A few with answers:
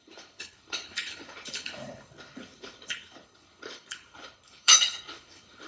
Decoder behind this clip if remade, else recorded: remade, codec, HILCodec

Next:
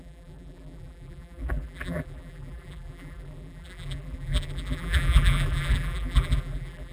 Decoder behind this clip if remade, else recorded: remade, vocoder, BigVGAN v2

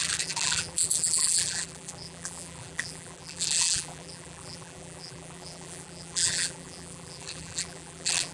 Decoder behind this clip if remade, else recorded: remade, vocoder, BigVGAN v2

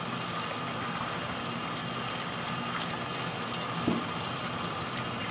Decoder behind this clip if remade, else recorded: recorded